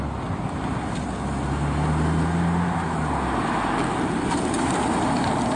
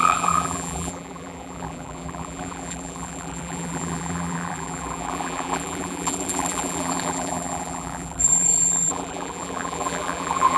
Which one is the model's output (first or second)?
second